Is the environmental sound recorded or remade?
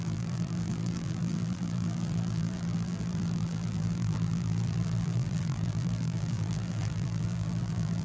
remade